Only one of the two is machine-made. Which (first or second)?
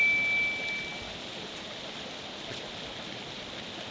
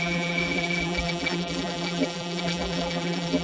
second